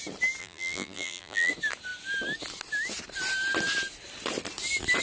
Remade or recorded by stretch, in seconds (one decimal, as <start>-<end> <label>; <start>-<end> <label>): 0.0-0.4 recorded; 0.4-1.5 remade; 1.5-5.0 recorded